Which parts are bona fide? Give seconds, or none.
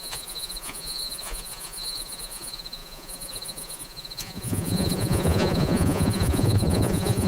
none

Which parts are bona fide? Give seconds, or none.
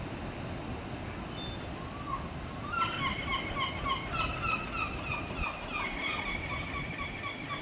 0.0-7.6